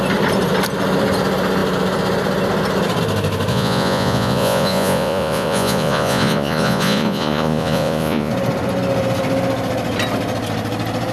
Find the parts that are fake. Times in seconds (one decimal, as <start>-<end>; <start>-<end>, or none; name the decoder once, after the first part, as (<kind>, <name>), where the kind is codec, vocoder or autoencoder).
3.5-8.3 (vocoder, Vocos)

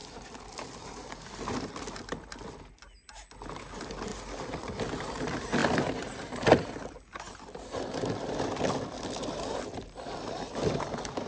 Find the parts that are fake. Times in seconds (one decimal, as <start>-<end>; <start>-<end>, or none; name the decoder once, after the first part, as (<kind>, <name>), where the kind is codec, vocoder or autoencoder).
none